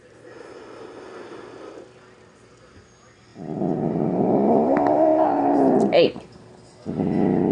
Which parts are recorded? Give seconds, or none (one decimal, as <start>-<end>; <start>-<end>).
0.0-7.5